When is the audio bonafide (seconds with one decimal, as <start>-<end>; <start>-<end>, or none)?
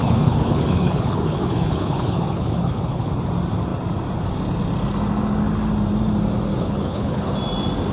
3.1-6.5; 7.3-7.9